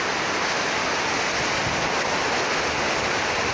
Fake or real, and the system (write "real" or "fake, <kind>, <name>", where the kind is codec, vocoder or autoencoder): real